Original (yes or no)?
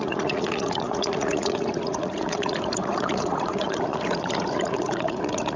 no